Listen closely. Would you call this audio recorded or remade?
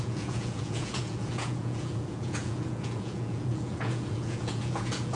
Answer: remade